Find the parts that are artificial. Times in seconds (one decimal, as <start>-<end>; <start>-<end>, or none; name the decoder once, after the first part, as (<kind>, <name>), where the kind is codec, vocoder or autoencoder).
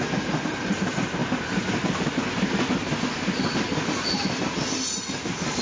none